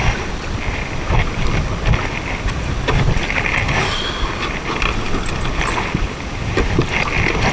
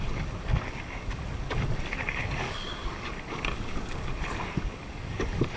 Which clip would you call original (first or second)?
first